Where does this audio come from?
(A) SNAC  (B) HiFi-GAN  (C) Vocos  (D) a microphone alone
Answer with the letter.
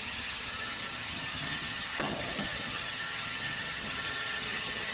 B